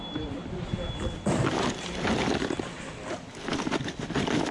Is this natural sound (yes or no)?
yes